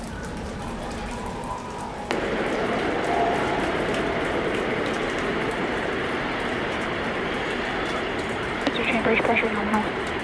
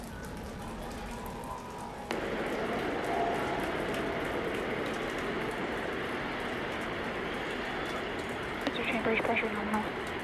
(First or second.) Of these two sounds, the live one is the second